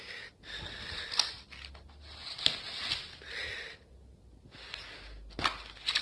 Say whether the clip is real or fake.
real